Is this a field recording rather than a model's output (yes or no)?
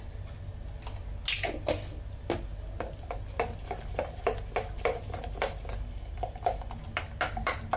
yes